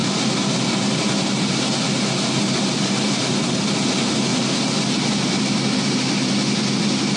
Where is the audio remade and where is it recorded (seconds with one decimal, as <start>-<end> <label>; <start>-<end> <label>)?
0.0-7.2 recorded